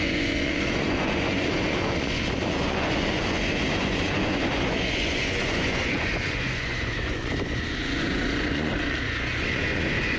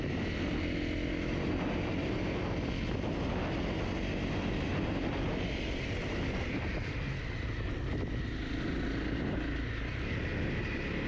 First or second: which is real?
second